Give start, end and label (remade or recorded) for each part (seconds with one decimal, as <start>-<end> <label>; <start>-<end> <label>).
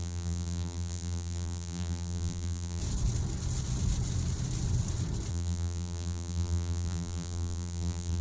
0.0-2.8 remade; 2.8-5.3 recorded; 5.3-8.2 remade